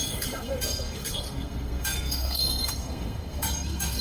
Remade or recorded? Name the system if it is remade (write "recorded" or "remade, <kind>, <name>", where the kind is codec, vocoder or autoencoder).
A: remade, codec, SNAC